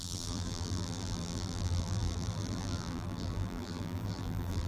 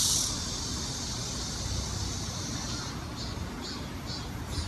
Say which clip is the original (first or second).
second